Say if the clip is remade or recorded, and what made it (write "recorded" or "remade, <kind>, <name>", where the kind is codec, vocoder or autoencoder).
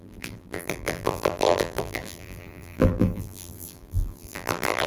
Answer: remade, vocoder, BigVGAN v2